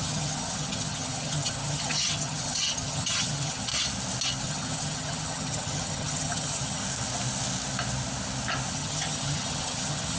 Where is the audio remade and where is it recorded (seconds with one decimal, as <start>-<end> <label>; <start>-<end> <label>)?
0.0-3.7 remade; 3.7-4.4 recorded; 4.4-6.8 remade; 6.8-8.7 recorded; 8.7-10.2 remade